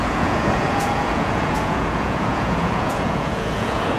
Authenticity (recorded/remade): remade